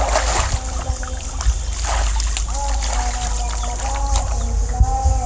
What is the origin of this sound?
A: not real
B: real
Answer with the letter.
B